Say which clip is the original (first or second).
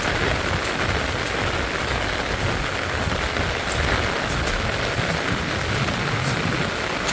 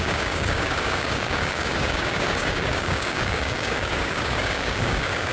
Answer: first